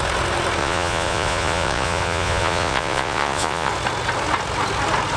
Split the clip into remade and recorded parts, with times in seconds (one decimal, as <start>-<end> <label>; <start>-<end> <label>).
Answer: 0.0-0.6 recorded; 0.6-3.7 remade; 3.7-5.2 recorded